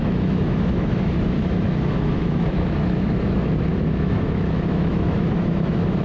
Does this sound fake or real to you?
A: fake